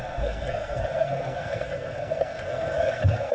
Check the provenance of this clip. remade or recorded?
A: remade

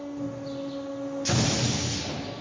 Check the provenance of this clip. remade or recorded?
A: recorded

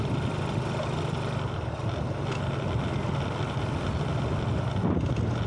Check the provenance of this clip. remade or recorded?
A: recorded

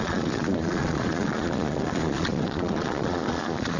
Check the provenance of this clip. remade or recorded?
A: remade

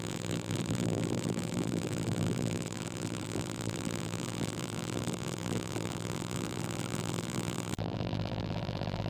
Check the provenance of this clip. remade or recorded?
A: remade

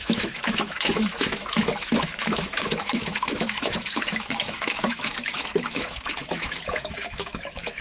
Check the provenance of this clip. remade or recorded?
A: remade